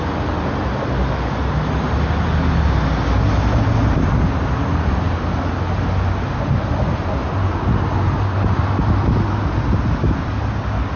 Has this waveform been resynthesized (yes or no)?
no